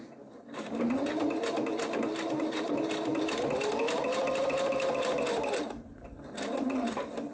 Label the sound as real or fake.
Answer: real